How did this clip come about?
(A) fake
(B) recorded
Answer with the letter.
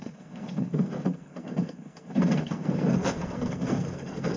A